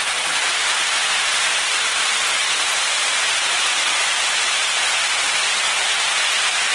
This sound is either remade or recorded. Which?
recorded